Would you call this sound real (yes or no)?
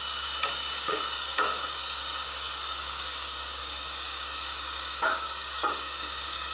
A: no